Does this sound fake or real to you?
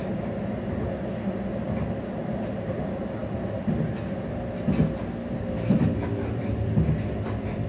real